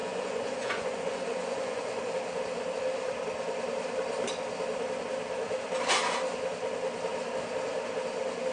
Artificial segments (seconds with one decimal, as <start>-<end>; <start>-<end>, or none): 0.0-2.0